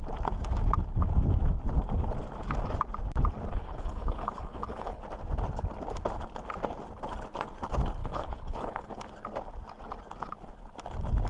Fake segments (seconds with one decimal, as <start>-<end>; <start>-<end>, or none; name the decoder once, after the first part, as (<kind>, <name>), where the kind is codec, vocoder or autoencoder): 3.5-5.0 (codec, HILCodec); 8.0-9.0